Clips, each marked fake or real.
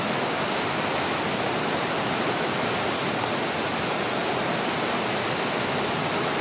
real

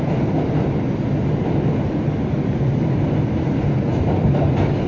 real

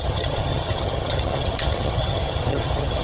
fake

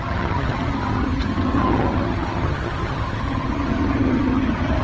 fake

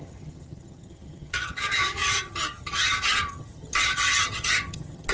fake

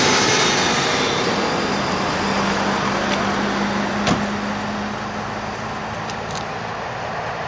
real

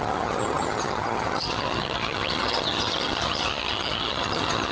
fake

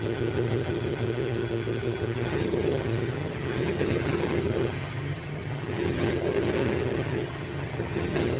fake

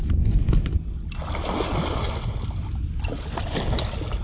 real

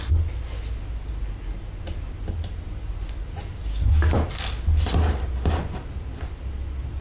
real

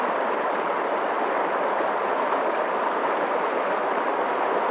real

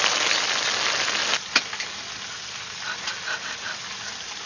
real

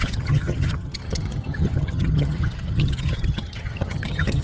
fake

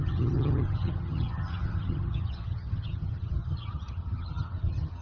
fake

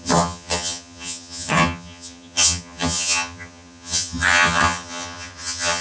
fake